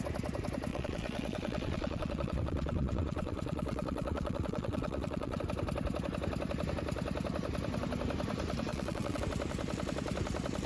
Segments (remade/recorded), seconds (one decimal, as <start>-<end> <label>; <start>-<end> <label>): 0.0-0.7 recorded; 0.7-5.4 remade; 5.4-8.7 recorded; 8.7-9.2 remade; 9.2-10.7 recorded